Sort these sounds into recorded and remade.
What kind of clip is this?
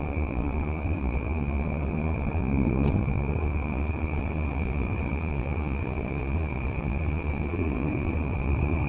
remade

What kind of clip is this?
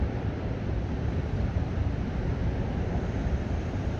remade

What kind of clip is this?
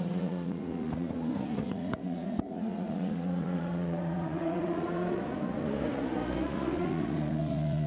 remade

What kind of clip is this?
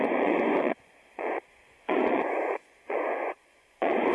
remade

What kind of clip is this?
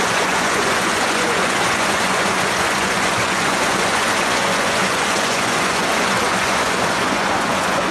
remade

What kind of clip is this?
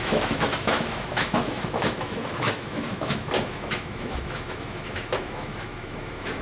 remade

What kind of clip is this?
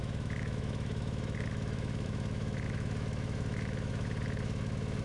remade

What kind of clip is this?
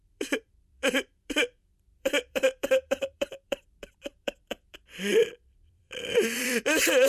remade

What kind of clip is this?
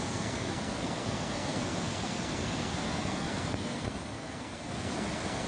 remade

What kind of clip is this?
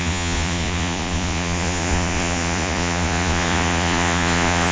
remade